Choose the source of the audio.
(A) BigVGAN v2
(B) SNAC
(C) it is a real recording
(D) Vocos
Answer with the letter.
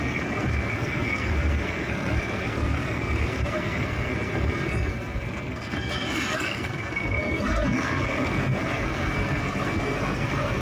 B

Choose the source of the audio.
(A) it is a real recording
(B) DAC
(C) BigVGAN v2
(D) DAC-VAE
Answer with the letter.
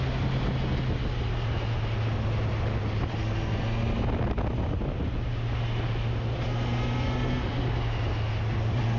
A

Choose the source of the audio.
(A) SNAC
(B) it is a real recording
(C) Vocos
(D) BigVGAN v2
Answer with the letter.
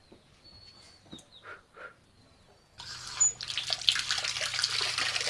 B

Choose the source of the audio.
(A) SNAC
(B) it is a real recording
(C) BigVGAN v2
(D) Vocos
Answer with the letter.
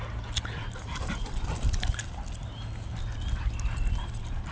B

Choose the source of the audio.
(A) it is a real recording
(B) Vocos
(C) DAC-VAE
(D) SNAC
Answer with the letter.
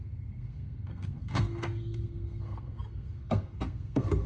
D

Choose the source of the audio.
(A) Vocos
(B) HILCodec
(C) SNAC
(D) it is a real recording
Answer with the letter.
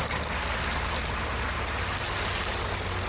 D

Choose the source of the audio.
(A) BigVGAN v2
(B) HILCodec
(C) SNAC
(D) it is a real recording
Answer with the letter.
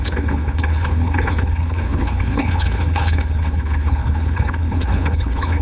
B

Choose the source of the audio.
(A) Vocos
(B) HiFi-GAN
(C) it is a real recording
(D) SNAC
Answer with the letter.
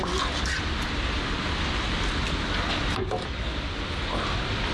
C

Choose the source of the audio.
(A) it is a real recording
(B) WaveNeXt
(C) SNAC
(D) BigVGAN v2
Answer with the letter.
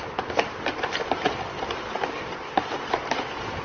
D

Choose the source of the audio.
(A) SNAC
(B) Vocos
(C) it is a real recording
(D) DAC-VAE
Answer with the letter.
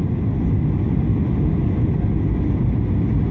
C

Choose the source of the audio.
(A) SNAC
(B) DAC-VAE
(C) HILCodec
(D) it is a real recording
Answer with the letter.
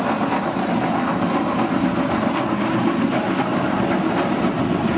D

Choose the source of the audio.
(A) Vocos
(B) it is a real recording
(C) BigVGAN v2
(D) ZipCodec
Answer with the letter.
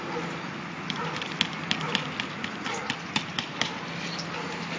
B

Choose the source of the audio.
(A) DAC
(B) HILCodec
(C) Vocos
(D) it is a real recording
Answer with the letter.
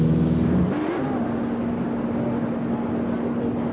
D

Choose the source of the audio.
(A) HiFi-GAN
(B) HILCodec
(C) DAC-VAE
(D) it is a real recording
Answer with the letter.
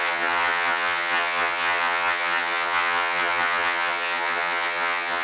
A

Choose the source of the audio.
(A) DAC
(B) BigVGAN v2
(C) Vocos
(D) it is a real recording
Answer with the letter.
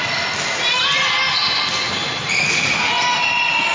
D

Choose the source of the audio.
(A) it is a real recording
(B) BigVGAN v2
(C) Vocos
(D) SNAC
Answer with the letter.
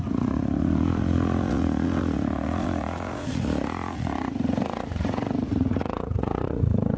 C